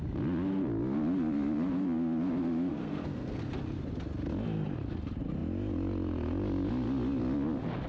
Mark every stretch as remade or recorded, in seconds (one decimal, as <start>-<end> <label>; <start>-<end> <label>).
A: 0.0-2.7 recorded; 2.7-3.4 remade; 3.4-7.9 recorded